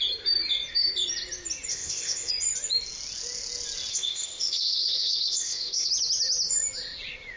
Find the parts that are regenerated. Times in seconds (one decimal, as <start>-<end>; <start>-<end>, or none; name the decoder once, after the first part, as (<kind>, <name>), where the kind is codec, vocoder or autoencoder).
1.7-2.3 (codec, ZipCodec); 3.9-5.9